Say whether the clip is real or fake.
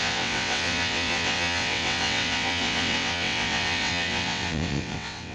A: fake